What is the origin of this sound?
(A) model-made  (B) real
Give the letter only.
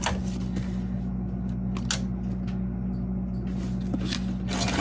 B